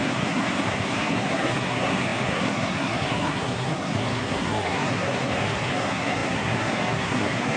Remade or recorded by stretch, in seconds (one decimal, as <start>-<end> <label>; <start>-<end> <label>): 0.0-7.6 remade